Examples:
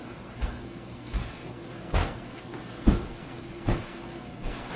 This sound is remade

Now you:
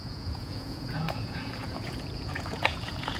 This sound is remade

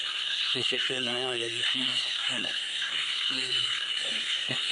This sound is remade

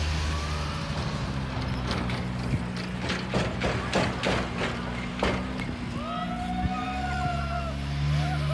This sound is recorded